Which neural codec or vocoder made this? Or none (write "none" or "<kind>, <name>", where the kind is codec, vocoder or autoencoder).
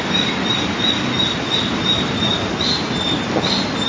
none